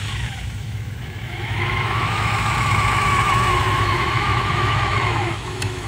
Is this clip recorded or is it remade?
remade